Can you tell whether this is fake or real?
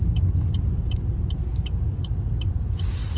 real